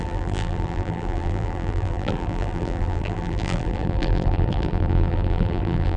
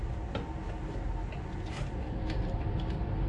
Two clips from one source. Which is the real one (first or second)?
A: second